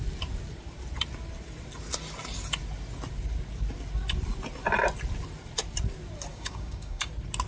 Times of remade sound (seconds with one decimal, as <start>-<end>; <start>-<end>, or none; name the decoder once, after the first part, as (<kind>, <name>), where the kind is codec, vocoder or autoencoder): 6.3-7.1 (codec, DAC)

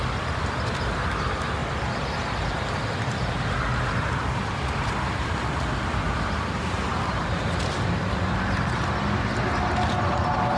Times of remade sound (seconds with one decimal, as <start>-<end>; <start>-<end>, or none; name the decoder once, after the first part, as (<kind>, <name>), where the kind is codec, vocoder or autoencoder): 1.6-5.5 (vocoder, BigVGAN v2)

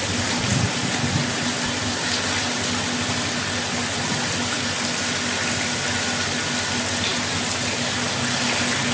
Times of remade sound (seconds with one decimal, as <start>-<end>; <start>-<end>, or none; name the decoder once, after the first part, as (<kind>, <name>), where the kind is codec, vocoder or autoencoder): none

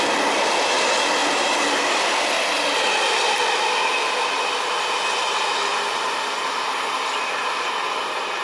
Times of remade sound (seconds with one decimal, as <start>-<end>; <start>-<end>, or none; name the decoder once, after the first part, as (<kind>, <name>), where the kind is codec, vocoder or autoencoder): none

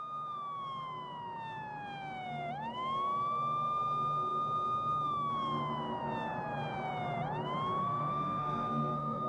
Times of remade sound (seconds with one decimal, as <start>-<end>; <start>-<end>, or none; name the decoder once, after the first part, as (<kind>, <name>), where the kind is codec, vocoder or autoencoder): 7.8-9.3 (codec, SNAC)

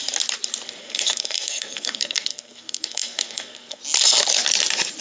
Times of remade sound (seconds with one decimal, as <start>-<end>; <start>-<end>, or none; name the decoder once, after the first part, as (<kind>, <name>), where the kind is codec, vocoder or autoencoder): 0.8-3.8 (codec, SNAC)

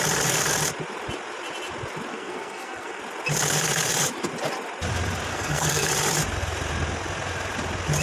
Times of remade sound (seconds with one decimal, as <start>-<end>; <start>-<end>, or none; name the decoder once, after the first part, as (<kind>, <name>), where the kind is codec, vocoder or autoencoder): 2.1-3.0 (codec, SNAC); 5.3-5.9